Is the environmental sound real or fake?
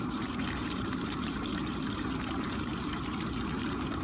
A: fake